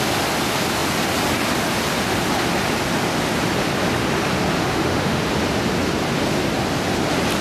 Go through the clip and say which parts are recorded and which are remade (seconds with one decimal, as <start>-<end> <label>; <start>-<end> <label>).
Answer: 0.0-4.7 recorded; 4.7-5.2 remade; 5.2-7.4 recorded